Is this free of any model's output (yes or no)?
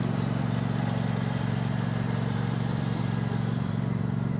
no